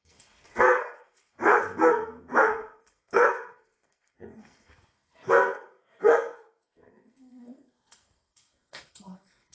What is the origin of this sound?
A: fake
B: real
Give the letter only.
A